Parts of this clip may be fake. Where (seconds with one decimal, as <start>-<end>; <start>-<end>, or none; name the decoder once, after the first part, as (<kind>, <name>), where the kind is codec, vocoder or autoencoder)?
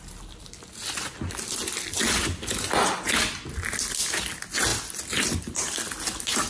4.7-5.4 (vocoder, BigVGAN v2)